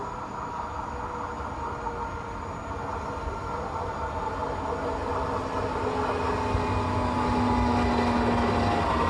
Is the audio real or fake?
real